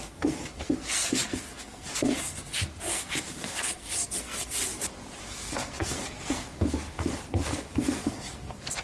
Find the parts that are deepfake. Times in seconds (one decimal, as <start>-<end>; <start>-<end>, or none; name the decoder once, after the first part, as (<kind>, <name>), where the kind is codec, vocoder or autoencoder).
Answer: 0.0-4.6 (codec, SNAC); 5.2-8.8